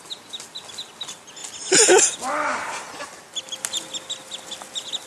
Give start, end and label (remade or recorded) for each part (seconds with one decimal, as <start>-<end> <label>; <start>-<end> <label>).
0.0-5.1 recorded